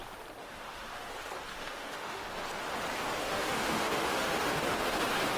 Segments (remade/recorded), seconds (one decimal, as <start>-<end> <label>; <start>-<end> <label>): 0.0-0.4 recorded; 0.4-1.1 remade; 1.1-1.5 recorded; 1.5-2.2 remade; 2.2-3.2 recorded; 3.2-5.0 remade; 5.0-5.4 recorded